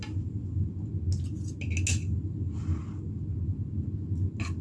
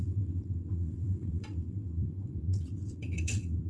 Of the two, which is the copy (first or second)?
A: second